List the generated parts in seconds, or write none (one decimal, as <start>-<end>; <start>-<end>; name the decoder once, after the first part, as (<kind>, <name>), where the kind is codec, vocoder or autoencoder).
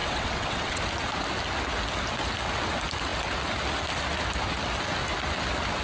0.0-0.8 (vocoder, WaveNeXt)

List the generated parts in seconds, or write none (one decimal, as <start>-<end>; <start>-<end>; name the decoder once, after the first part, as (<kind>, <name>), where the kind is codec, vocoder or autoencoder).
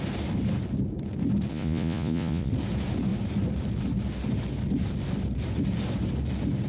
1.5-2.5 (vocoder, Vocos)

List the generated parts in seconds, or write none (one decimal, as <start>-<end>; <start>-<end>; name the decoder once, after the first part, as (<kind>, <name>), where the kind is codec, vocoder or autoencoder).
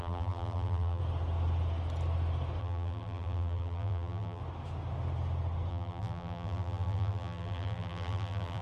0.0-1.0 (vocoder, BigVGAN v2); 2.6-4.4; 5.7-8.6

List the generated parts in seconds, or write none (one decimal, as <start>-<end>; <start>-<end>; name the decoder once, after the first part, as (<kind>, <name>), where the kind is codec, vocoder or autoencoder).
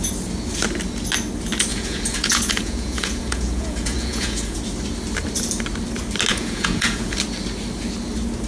1.7-4.6 (vocoder, Vocos); 6.3-7.2